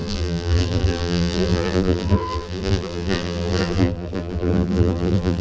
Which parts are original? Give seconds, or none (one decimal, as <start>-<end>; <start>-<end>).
none